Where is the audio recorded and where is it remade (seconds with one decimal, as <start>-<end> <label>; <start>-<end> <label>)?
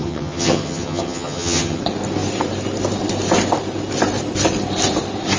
0.0-1.8 remade; 1.8-5.4 recorded